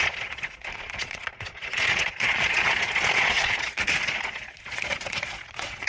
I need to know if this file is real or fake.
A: fake